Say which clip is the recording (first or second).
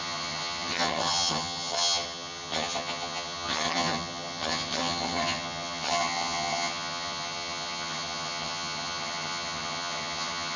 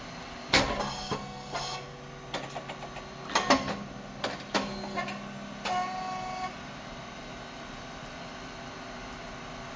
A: second